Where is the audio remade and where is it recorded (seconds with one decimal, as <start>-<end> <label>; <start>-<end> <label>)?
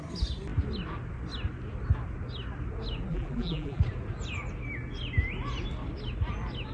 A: 0.0-3.1 recorded; 3.1-3.8 remade; 3.8-6.7 recorded